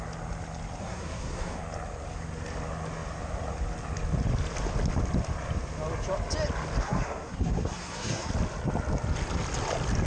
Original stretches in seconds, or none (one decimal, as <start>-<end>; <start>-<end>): 0.0-0.8; 1.6-6.8; 8.3-10.1